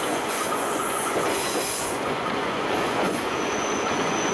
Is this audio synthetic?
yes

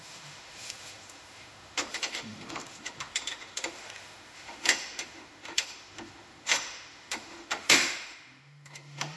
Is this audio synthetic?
yes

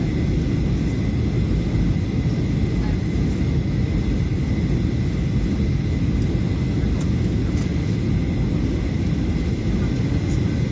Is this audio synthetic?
no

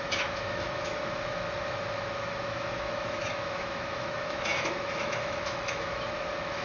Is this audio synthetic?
yes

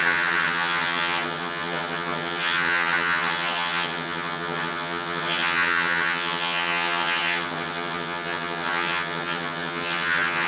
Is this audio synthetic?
yes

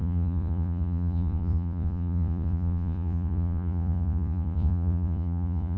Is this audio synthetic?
yes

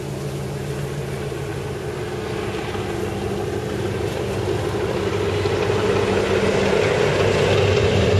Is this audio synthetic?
no